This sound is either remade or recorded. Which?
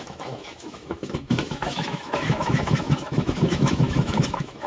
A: remade